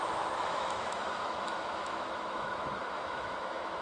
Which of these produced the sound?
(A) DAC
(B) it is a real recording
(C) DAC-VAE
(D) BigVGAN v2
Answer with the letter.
C